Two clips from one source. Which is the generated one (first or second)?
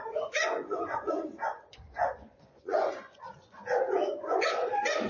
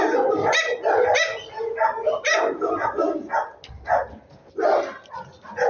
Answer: first